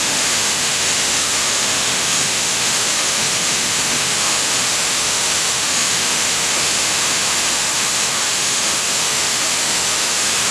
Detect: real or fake fake